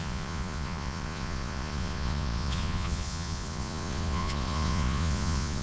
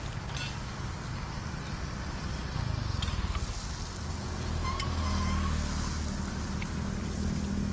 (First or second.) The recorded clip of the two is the second